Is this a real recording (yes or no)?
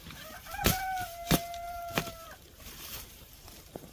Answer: no